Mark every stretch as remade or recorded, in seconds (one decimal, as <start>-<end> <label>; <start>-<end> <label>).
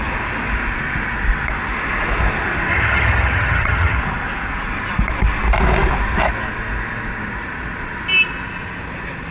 0.0-2.7 recorded; 2.7-4.0 remade; 4.0-9.3 recorded